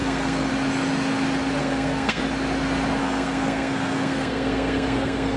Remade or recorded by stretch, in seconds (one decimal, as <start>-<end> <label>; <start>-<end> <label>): 0.0-0.5 remade; 0.5-1.6 recorded; 1.6-2.2 remade; 2.2-3.0 recorded; 3.0-5.4 remade